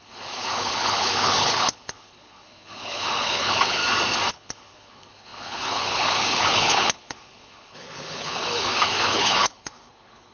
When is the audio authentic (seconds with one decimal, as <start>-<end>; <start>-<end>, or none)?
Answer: 3.8-4.3